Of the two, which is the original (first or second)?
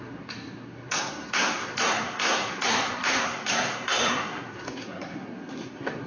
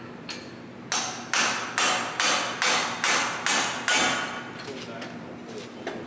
second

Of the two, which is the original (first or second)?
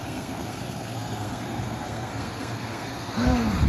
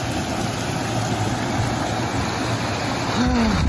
second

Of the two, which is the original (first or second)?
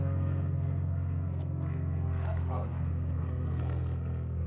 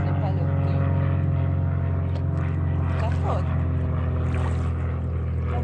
second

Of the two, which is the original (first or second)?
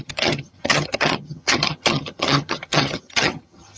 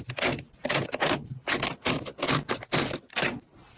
second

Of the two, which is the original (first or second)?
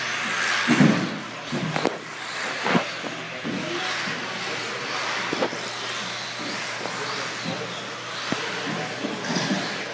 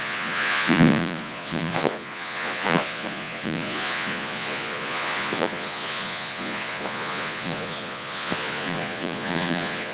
first